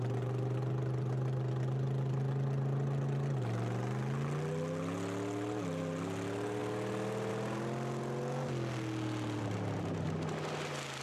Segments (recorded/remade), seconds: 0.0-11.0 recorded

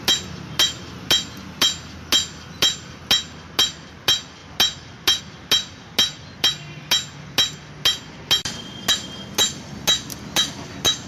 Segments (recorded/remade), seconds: 0.0-11.1 recorded

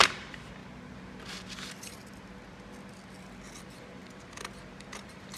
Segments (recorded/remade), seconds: 0.0-0.6 remade; 0.6-3.6 recorded; 3.6-4.0 remade; 4.0-4.7 recorded; 4.7-5.4 remade

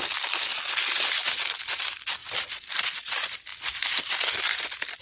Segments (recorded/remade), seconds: 0.0-2.2 recorded; 2.2-2.8 remade; 2.8-5.0 recorded

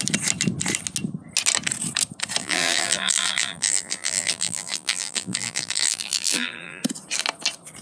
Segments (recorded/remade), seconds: 0.0-2.4 recorded; 2.4-6.8 remade; 6.8-7.8 recorded

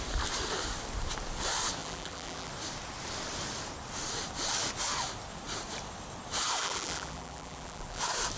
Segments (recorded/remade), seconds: 0.0-1.8 recorded; 1.8-2.5 remade; 2.5-6.6 recorded; 6.6-8.0 remade; 8.0-8.4 recorded